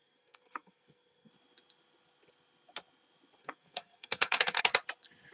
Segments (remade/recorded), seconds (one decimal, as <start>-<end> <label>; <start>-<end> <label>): 0.0-1.3 remade; 1.3-3.4 recorded; 3.4-4.6 remade; 4.6-5.3 recorded